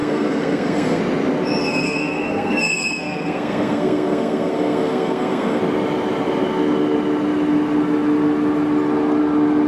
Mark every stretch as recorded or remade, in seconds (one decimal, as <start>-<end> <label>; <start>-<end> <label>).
0.0-1.0 remade; 1.0-1.6 recorded; 1.6-5.6 remade; 5.6-9.7 recorded